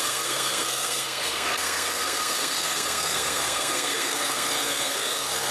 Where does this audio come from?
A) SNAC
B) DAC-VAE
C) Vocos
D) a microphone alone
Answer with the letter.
A